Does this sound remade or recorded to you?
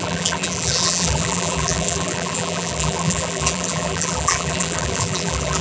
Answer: remade